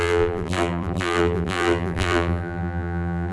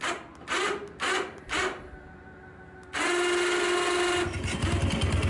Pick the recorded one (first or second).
second